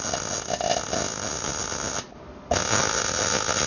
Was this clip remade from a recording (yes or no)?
no